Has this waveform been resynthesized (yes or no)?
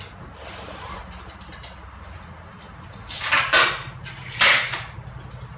no